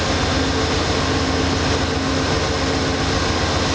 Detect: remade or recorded recorded